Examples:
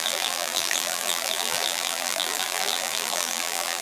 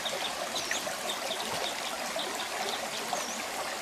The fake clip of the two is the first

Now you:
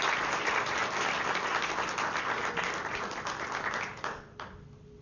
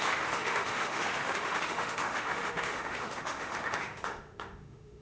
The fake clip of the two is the second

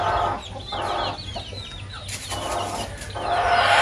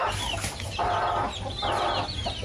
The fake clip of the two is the second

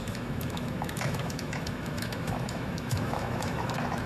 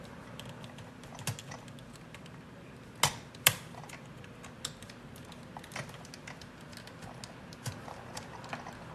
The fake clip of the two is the first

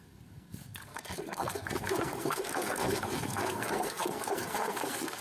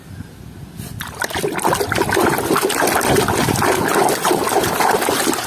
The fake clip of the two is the first